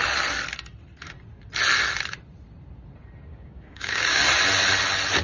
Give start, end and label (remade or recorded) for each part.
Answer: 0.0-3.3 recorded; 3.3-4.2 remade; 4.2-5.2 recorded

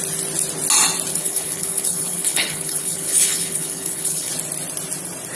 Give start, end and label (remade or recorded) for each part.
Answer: 0.0-1.1 recorded; 1.1-4.3 remade; 4.3-5.4 recorded

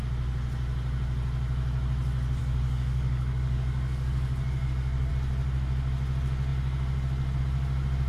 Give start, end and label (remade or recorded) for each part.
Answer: 0.0-2.4 recorded; 2.4-5.1 remade; 5.1-8.1 recorded

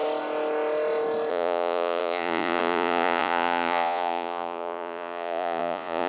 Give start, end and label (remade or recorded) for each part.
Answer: 0.0-1.3 recorded; 1.3-6.1 remade